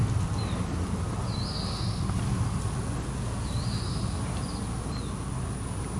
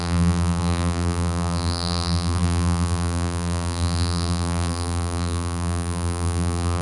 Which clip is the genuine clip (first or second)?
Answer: first